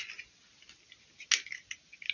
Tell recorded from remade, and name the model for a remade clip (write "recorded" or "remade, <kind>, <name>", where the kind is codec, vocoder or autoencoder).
recorded